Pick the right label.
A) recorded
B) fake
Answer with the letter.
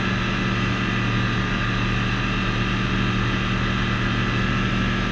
A